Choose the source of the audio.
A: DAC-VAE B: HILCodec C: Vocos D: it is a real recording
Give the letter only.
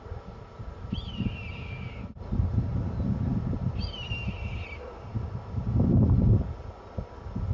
D